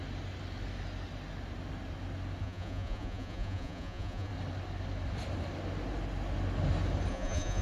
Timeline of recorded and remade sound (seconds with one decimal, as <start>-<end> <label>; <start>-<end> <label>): 0.0-2.4 recorded; 2.4-4.3 remade; 4.3-7.1 recorded; 7.1-7.6 remade